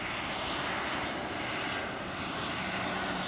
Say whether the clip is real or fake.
real